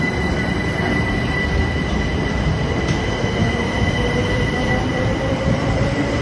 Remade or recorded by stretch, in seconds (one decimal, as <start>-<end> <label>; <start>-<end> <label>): 0.0-0.6 remade; 0.6-1.2 recorded; 1.2-6.2 remade